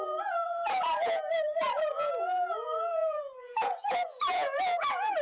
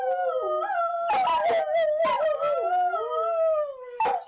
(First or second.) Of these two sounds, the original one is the second